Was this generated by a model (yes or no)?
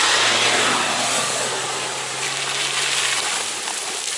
no